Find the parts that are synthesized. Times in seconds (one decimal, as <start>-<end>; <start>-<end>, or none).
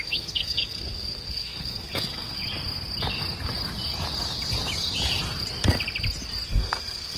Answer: 0.0-2.4; 6.5-7.2